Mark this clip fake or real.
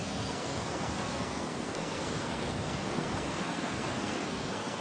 fake